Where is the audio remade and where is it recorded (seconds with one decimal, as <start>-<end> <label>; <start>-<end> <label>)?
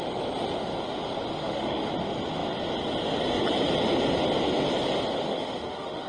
0.0-1.4 recorded; 1.4-1.9 remade; 1.9-5.3 recorded; 5.3-6.1 remade